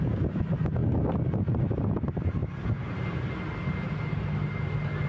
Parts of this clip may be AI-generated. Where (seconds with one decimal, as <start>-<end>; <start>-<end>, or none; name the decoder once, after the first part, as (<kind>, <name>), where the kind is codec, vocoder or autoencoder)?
none